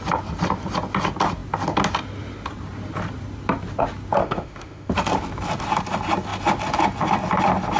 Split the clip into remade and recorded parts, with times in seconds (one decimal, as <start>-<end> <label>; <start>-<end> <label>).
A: 0.0-4.2 recorded; 4.2-4.9 remade; 4.9-7.8 recorded